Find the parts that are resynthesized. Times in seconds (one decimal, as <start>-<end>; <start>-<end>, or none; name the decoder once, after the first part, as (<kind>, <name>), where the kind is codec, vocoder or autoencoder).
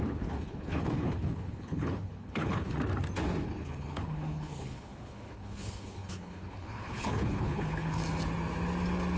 0.0-2.7 (codec, HILCodec); 3.4-8.0